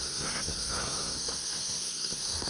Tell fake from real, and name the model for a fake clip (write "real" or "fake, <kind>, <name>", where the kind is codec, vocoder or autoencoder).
fake, codec, SNAC